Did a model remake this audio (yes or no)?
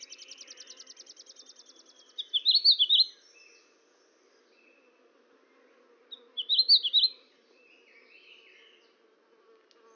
no